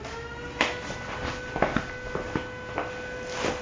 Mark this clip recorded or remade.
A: recorded